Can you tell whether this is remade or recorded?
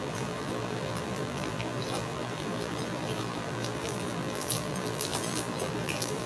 remade